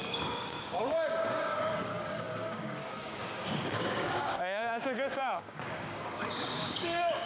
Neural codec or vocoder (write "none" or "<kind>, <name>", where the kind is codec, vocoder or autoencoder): codec, DAC